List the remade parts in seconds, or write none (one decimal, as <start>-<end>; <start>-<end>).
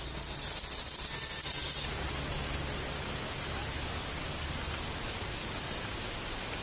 none